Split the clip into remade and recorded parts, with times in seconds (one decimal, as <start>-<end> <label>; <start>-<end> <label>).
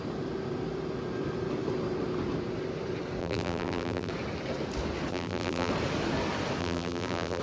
0.0-3.2 recorded; 3.2-4.1 remade; 4.1-5.1 recorded; 5.1-5.7 remade; 5.7-6.6 recorded; 6.6-7.4 remade